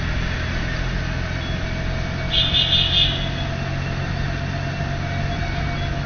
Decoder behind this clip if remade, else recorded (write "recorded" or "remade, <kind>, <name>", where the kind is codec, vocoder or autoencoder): recorded